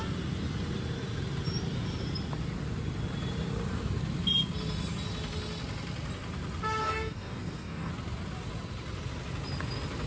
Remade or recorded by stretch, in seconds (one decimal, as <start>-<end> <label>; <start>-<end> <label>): 0.0-6.8 recorded; 6.8-7.9 remade; 7.9-10.1 recorded